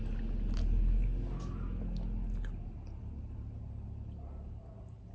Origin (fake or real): real